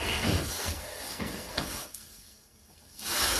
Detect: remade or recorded remade